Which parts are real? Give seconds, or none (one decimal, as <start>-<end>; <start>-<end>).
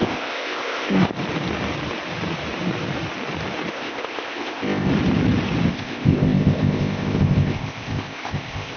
1.1-3.7; 4.9-5.7